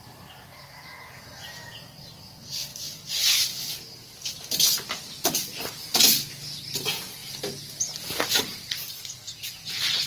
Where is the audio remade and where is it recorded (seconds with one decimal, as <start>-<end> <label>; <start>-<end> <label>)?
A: 0.0-2.7 recorded; 2.7-4.4 remade; 4.4-10.1 recorded